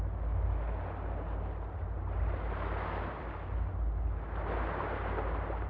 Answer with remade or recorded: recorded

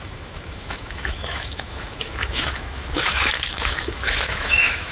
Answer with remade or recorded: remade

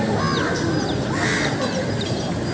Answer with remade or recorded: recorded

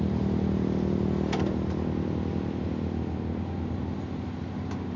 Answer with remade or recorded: recorded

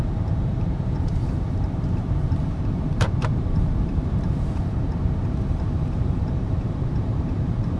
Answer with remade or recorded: remade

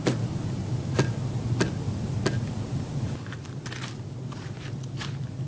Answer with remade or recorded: recorded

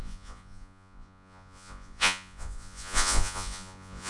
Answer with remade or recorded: remade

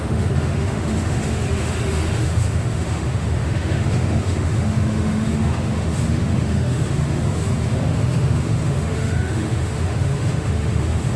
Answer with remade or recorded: remade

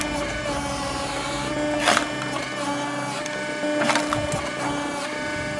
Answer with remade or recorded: recorded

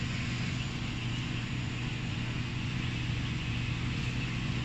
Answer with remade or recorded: remade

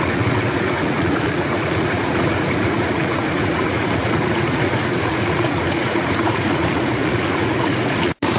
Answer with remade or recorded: remade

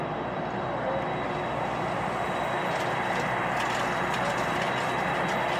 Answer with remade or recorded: recorded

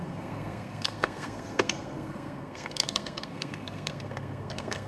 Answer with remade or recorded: remade